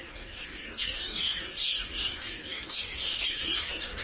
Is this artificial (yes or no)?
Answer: yes